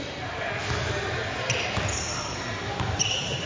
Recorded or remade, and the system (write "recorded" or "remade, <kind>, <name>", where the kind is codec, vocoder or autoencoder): recorded